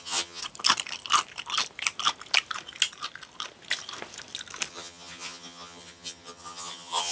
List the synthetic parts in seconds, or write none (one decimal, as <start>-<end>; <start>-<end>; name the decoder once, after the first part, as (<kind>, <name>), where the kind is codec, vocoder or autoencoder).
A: 0.0-0.4 (vocoder, HiFi-GAN); 4.7-7.1